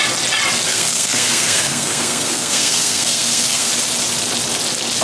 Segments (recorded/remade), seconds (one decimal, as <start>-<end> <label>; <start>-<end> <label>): 0.0-0.7 recorded; 0.7-3.7 remade; 3.7-5.0 recorded

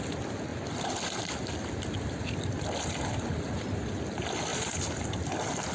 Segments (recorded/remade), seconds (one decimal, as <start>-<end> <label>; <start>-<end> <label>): 0.0-4.5 recorded; 4.5-5.3 remade; 5.3-5.7 recorded

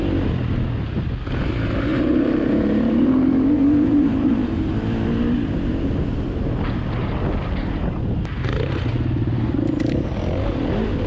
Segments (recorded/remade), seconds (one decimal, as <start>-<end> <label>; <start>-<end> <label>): 0.0-1.9 recorded; 1.9-4.7 remade; 4.7-11.1 recorded

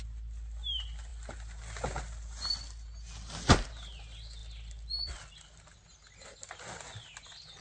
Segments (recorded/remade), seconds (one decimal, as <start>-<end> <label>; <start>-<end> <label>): 0.0-7.6 recorded

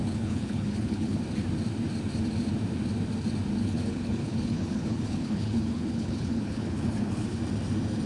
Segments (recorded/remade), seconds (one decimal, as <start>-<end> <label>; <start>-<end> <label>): 0.0-1.2 remade; 1.2-3.6 recorded; 3.6-7.4 remade; 7.4-8.1 recorded

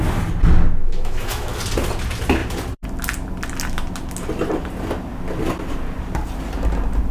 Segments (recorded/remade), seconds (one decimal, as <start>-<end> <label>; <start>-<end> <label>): 0.0-0.8 recorded; 0.8-1.5 remade; 1.5-7.1 recorded